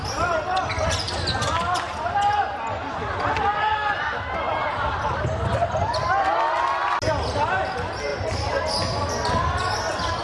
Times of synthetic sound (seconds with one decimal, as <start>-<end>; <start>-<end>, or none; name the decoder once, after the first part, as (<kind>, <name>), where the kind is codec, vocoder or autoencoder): none